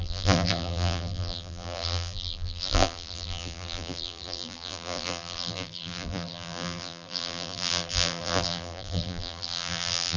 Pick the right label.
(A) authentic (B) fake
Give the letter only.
B